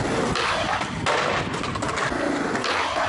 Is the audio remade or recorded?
recorded